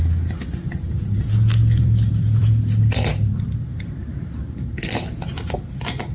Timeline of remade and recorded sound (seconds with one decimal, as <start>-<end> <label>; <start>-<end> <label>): 0.0-1.6 recorded; 1.6-3.1 remade; 3.1-6.1 recorded